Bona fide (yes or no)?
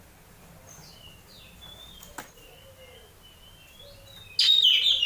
yes